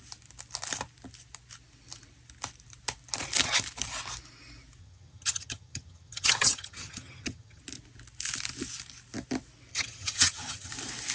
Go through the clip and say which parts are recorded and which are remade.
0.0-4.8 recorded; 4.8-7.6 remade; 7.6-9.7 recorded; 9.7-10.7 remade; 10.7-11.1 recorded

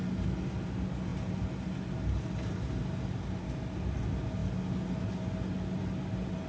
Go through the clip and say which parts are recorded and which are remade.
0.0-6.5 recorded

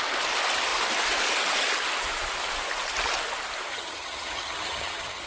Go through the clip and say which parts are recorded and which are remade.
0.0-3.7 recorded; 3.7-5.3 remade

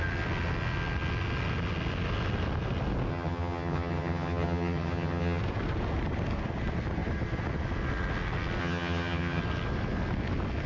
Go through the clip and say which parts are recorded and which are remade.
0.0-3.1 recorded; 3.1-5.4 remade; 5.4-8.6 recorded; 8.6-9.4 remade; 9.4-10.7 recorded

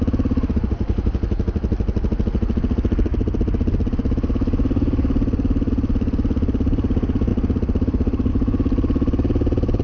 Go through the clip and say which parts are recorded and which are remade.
0.0-9.8 recorded

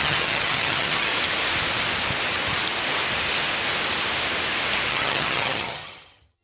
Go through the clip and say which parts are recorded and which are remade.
0.0-1.1 remade; 1.1-4.9 recorded; 4.9-6.4 remade

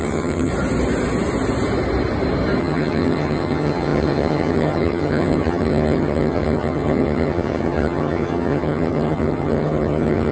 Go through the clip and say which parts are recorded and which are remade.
0.0-0.5 remade; 0.5-2.6 recorded; 2.6-10.3 remade